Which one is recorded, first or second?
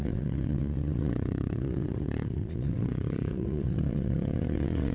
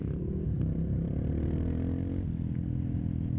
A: second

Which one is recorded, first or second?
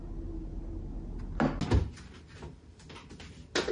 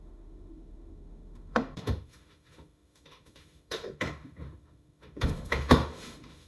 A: first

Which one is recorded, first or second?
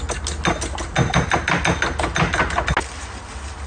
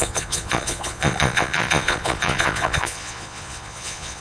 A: first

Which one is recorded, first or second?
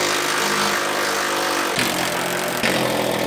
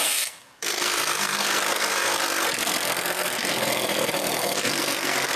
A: first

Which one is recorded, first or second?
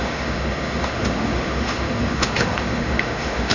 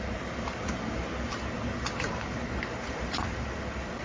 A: second